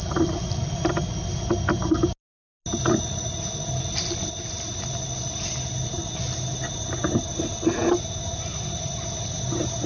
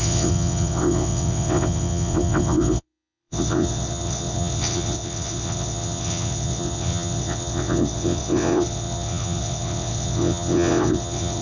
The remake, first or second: second